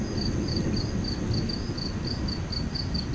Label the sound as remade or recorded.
recorded